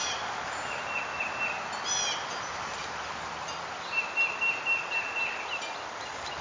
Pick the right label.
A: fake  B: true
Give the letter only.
B